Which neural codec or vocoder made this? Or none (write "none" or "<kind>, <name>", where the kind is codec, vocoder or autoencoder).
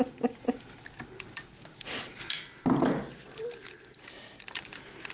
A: none